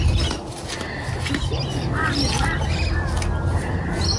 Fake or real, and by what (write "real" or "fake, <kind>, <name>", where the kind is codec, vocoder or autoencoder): real